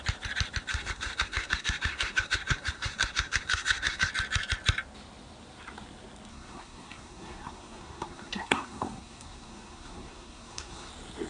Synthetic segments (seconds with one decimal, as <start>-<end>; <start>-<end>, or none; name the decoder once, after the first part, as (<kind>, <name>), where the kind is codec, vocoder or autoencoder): 0.7-4.1 (codec, SNAC); 6.3-10.9